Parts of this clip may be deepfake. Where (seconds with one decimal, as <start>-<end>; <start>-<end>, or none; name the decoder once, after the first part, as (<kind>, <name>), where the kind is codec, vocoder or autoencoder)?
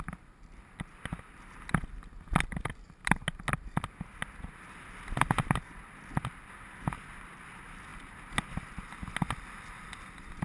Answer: none